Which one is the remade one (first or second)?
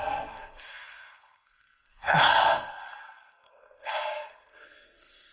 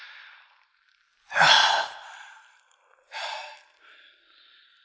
first